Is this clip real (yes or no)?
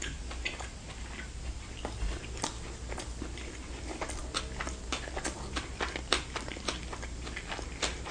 yes